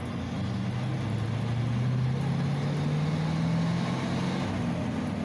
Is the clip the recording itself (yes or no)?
yes